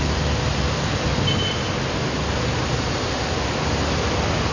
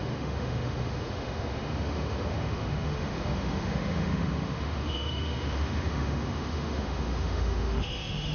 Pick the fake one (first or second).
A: second